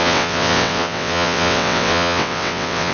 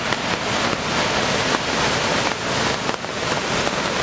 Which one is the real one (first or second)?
second